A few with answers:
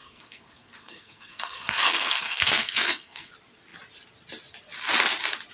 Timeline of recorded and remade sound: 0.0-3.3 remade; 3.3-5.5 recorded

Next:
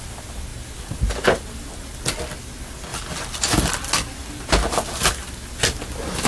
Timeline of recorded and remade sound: 0.0-6.3 recorded

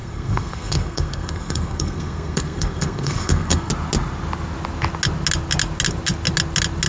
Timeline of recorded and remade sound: 0.0-3.7 remade; 3.7-6.9 recorded

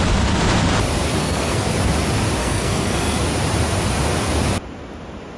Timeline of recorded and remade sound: 0.0-1.2 recorded; 1.2-1.7 remade; 1.7-2.4 recorded; 2.4-3.2 remade; 3.2-5.4 recorded

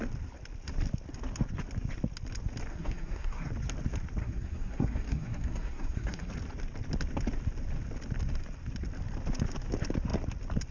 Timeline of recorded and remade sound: 0.0-2.7 recorded; 2.7-3.5 remade; 3.5-4.2 recorded; 4.2-6.3 remade; 6.3-10.7 recorded

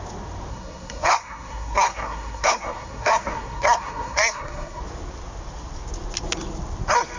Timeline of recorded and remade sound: 0.0-0.5 recorded; 0.5-4.8 remade; 4.8-7.2 recorded

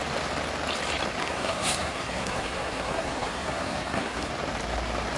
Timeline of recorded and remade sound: 0.0-1.2 recorded; 1.2-4.3 remade; 4.3-5.2 recorded